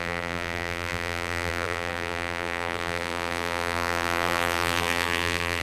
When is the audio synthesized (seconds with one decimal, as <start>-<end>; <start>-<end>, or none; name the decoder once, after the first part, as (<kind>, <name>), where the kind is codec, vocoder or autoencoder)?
0.0-5.6 (vocoder, BigVGAN v2)